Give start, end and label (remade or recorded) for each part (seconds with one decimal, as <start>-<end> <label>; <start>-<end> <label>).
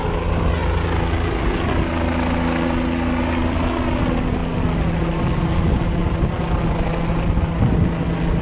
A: 0.0-8.4 recorded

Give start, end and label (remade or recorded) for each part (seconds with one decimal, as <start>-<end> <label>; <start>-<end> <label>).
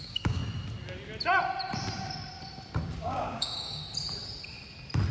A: 0.0-0.4 remade; 0.4-3.0 recorded; 3.0-3.8 remade; 3.8-5.1 recorded